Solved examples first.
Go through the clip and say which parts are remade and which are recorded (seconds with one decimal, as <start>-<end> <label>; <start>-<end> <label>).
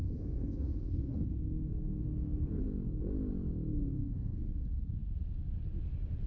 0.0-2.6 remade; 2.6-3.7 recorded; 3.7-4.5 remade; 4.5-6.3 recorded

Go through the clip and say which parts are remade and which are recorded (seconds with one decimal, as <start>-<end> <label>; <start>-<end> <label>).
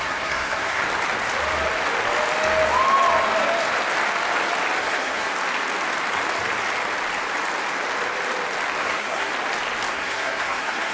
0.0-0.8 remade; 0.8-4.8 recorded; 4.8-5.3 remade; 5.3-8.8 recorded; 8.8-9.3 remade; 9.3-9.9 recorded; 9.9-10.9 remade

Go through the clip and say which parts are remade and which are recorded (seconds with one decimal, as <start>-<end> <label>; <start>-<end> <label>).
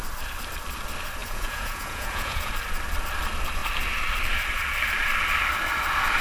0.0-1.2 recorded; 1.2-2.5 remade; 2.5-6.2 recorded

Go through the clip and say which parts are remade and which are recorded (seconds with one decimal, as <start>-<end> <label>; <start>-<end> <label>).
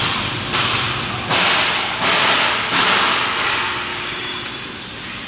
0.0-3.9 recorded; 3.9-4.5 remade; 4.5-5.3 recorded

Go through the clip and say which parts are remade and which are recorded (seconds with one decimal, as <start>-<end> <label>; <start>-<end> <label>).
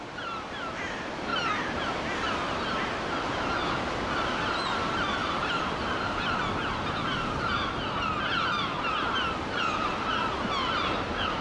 0.0-5.2 recorded; 5.2-6.4 remade; 6.4-11.4 recorded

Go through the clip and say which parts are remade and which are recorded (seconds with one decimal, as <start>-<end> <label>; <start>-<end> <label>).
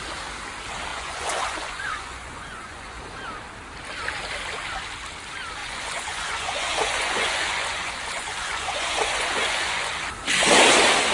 0.0-0.9 recorded; 0.9-3.0 remade; 3.0-5.6 recorded; 5.6-9.9 remade; 9.9-11.1 recorded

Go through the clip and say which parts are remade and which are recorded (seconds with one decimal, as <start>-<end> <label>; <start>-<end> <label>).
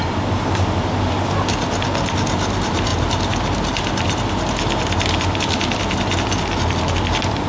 0.0-7.5 recorded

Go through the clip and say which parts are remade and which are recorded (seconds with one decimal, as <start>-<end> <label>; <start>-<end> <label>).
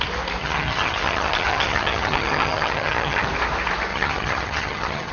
0.0-0.4 recorded; 0.4-3.3 remade; 3.3-3.9 recorded; 3.9-5.1 remade